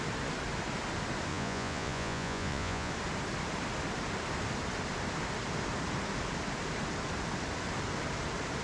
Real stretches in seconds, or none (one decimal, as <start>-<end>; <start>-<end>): 0.0-1.3; 2.9-8.6